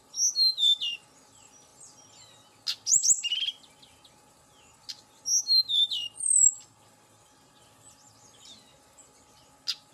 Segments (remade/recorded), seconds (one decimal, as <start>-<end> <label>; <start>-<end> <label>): 0.0-9.9 recorded